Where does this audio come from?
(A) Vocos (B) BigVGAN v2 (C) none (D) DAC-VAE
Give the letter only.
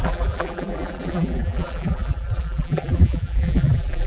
B